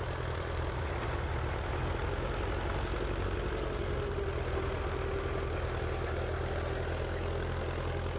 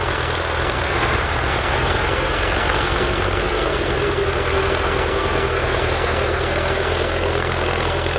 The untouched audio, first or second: first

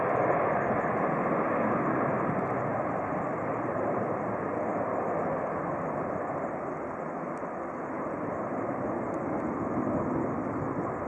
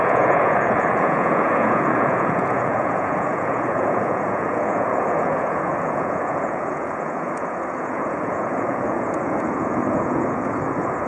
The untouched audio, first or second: first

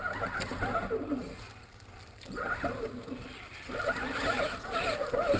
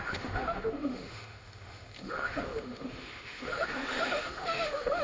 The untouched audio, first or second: first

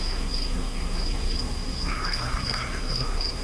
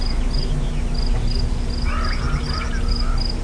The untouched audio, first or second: second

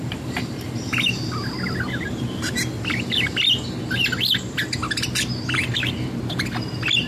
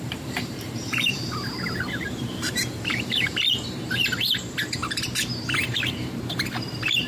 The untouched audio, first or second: first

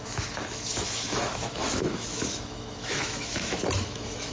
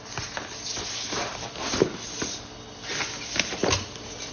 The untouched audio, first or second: second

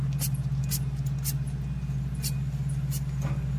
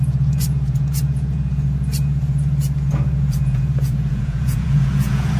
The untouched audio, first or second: first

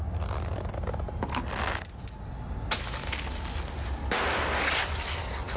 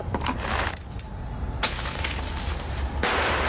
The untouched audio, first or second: first